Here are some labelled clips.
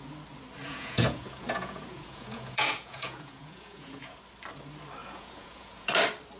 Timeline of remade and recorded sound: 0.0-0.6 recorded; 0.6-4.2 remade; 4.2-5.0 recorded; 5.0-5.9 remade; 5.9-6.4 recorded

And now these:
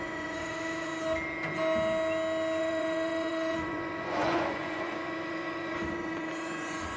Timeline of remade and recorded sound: 0.0-0.9 remade; 0.9-2.6 recorded; 2.6-7.0 remade

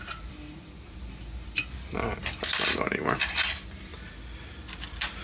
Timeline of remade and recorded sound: 0.0-3.9 remade; 3.9-4.4 recorded; 4.4-5.2 remade

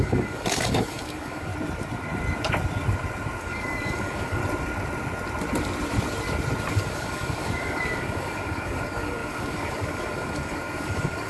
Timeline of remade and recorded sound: 0.0-1.5 remade; 1.5-3.4 recorded; 3.4-4.4 remade; 4.4-6.7 recorded; 6.7-11.3 remade